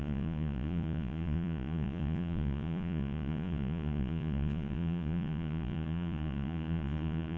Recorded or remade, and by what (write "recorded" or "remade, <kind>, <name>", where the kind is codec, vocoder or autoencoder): remade, vocoder, Vocos